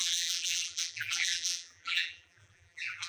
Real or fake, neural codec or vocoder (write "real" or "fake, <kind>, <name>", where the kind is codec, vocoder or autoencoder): fake, vocoder, BigVGAN v2